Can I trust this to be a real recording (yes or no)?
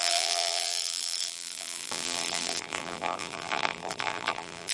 no